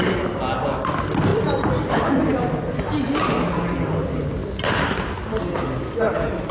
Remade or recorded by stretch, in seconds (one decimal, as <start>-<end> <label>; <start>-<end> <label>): 0.0-6.5 recorded

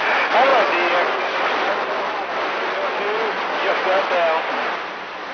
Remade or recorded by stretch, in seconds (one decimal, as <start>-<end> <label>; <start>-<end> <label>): 0.0-5.3 recorded

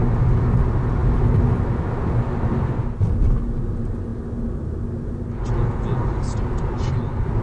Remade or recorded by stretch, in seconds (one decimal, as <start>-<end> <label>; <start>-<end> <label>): 0.0-7.4 recorded